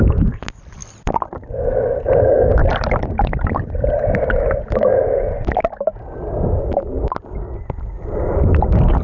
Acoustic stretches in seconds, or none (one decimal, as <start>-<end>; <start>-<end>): 0.0-2.6; 3.2-9.0